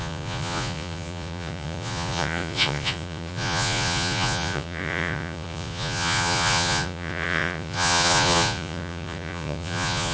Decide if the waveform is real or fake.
fake